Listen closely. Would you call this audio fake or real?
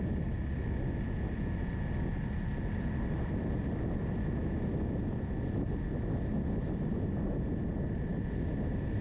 real